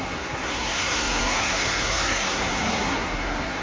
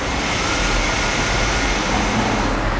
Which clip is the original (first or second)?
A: second